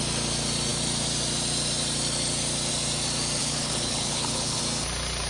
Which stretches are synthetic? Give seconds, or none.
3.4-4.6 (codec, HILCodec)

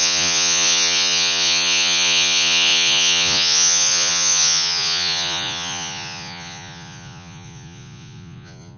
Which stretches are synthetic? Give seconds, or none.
0.0-8.8 (vocoder, Vocos)

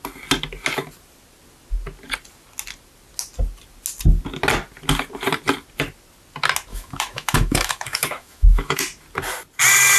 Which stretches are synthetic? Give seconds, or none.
6.7-8.8 (autoencoder, DAC-VAE)

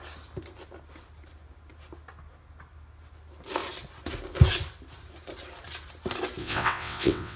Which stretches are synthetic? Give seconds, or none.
6.4-7.4 (vocoder, WaveNeXt)